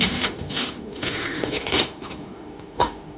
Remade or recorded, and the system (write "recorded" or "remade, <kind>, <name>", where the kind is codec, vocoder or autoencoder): remade, autoencoder, DAC-VAE